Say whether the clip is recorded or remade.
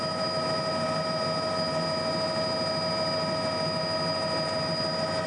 recorded